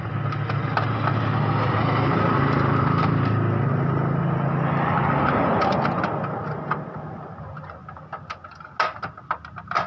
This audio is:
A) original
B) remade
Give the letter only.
A